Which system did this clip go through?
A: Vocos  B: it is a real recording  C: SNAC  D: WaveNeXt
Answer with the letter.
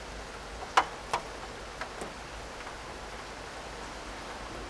B